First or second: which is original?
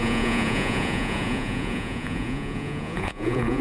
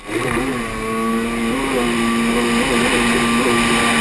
second